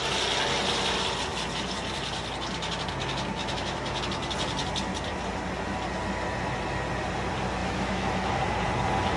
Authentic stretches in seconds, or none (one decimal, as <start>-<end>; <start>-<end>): 0.0-3.4; 4.0-7.6; 8.4-9.2